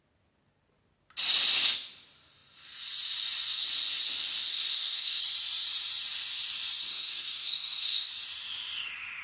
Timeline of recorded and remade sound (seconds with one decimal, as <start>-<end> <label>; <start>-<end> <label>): 0.0-4.5 recorded; 4.5-5.2 remade; 5.2-6.9 recorded; 6.9-8.1 remade; 8.1-9.2 recorded